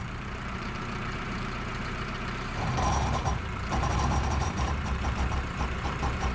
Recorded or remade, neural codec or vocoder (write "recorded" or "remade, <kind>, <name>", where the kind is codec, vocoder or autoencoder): remade, vocoder, BigVGAN v2